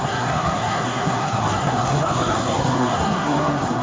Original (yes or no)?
no